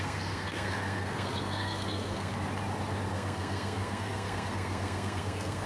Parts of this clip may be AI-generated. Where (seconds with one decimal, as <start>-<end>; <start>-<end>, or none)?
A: 0.0-2.3; 3.1-5.7